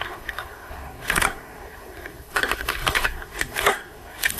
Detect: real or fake fake